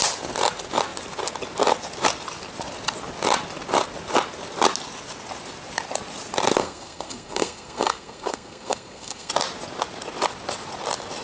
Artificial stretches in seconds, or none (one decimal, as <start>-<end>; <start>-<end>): 6.6-9.3